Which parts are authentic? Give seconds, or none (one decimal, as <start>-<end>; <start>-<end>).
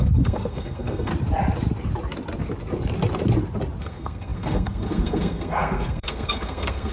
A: 1.1-3.8